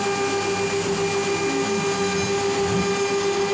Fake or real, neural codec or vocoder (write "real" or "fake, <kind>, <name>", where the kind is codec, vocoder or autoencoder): real